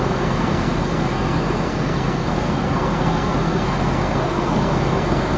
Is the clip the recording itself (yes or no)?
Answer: no